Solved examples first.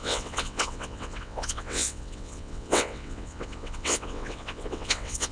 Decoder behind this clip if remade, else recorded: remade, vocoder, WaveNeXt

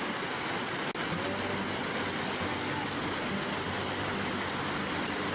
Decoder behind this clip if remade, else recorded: recorded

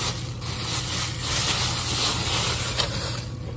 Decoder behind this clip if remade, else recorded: recorded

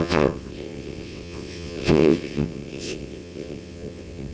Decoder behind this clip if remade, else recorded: remade, vocoder, WaveNeXt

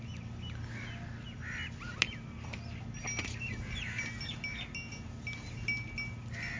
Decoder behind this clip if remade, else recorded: recorded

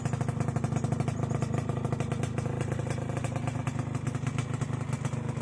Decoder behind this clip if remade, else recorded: recorded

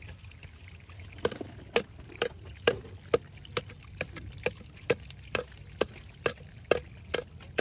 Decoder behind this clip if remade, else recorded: recorded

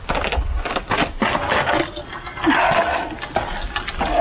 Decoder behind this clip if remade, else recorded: recorded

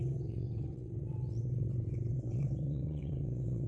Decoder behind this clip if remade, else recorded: remade, vocoder, WaveNeXt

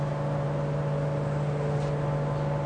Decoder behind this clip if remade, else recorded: recorded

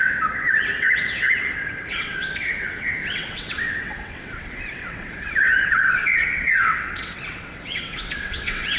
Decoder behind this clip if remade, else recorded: remade, vocoder, WaveNeXt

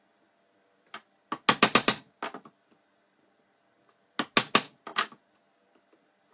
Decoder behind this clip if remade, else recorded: recorded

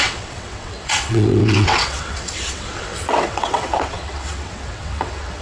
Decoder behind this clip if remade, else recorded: remade, vocoder, WaveNeXt